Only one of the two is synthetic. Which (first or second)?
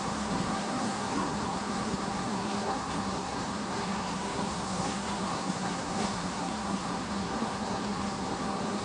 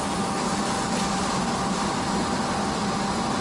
first